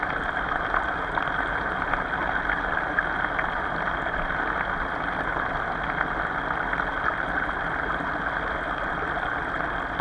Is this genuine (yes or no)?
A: yes